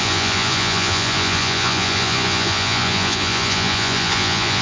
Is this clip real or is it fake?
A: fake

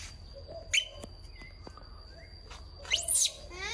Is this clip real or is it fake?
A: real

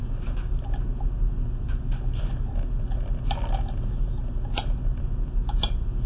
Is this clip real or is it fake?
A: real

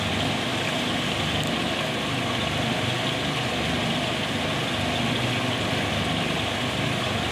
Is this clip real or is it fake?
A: real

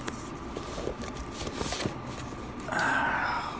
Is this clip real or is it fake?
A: real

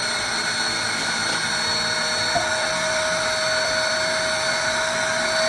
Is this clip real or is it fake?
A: real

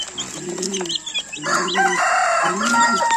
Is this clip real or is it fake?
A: real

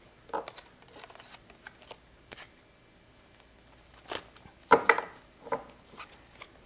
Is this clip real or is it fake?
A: real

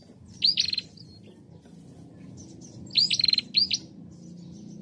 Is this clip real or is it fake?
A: real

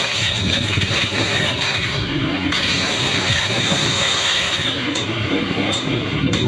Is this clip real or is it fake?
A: fake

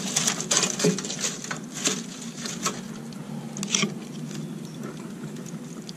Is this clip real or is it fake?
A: real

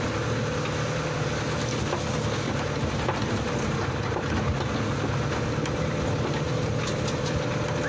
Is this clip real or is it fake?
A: real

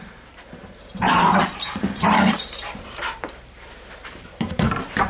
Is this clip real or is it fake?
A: fake